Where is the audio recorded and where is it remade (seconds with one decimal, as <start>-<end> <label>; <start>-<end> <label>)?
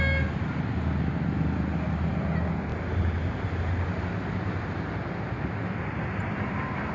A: 0.0-6.9 recorded